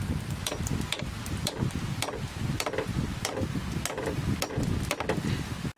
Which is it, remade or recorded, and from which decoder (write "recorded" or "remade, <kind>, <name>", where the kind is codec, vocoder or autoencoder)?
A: recorded